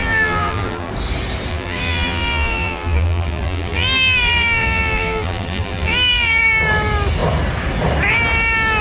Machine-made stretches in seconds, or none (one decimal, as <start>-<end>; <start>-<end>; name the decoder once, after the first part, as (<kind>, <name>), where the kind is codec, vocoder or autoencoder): 0.0-0.9 (vocoder, BigVGAN v2); 1.5-6.5